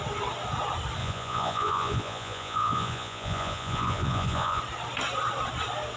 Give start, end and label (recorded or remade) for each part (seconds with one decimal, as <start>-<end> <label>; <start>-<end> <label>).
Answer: 0.0-1.0 recorded; 1.0-4.6 remade; 4.6-6.0 recorded